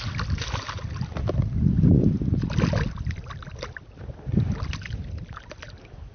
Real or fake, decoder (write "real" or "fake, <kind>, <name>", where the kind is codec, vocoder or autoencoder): real